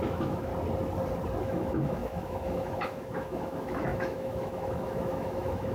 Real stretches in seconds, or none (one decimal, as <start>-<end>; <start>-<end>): 0.5-1.4